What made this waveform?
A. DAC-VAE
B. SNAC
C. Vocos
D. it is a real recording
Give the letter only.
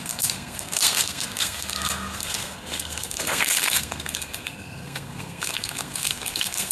B